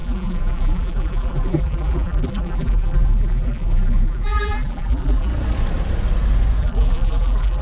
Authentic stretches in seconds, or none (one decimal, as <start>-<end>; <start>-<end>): 5.3-6.6